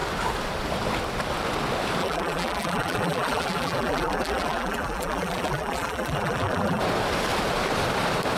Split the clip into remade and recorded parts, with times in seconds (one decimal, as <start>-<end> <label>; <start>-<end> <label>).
0.0-2.0 recorded; 2.0-6.8 remade; 6.8-8.4 recorded

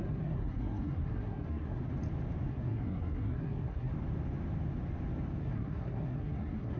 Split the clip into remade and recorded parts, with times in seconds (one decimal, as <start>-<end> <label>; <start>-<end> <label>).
0.0-1.8 remade; 1.8-2.5 recorded; 2.5-3.9 remade; 3.9-5.4 recorded; 5.4-6.8 remade